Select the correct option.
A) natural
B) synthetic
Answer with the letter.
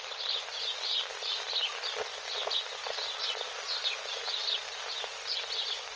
A